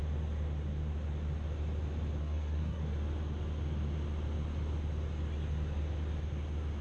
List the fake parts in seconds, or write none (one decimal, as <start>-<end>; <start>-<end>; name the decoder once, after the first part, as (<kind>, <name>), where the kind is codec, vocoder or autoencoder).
2.2-2.8 (codec, SNAC)